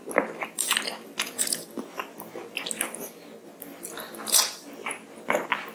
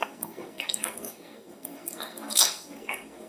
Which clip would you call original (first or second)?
first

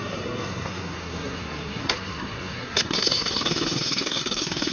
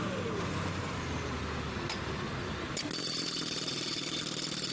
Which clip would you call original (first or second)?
second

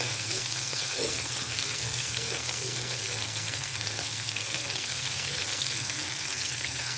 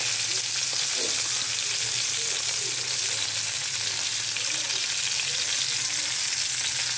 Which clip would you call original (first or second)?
second